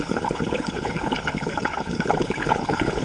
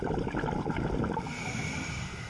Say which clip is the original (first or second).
second